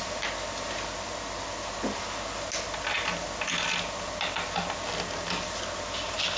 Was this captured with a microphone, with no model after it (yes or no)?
yes